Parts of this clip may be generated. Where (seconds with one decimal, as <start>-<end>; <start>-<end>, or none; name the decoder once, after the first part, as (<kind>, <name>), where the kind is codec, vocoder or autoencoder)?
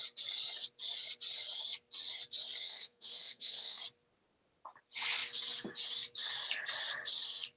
2.6-3.8 (codec, SNAC)